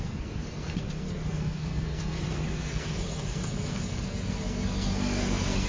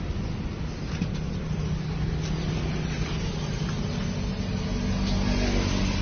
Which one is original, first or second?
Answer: second